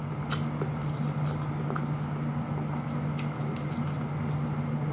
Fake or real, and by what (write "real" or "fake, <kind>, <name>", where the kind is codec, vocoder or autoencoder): real